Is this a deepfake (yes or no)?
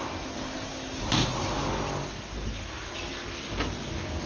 no